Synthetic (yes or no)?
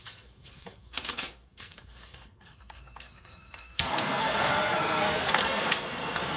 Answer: yes